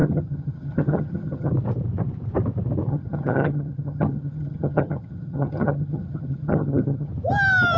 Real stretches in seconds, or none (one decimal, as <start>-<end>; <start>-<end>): 1.5-2.9; 7.1-7.8